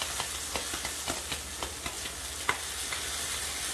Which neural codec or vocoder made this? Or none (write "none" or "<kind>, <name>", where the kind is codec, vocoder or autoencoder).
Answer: none